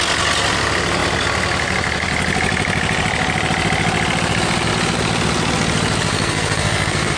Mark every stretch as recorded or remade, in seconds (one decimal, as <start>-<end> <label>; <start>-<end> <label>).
0.0-6.1 recorded; 6.1-7.2 remade